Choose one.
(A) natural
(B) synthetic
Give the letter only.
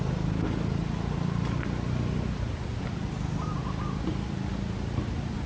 A